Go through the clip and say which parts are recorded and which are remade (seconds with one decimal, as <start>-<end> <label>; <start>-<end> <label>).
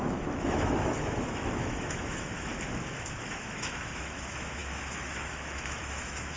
0.0-2.5 remade; 2.5-3.2 recorded; 3.2-6.4 remade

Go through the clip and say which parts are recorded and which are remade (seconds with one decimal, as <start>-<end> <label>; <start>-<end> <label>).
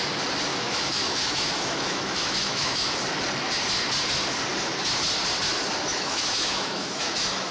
0.0-0.5 recorded; 0.5-2.9 remade; 2.9-5.9 recorded; 5.9-7.5 remade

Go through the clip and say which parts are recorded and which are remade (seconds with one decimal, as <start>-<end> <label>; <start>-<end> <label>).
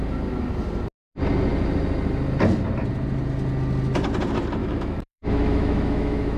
0.0-4.6 recorded; 4.6-6.4 remade